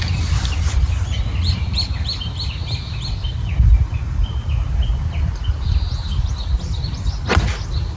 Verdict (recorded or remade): recorded